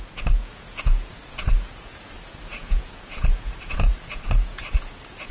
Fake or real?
fake